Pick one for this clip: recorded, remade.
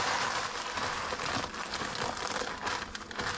recorded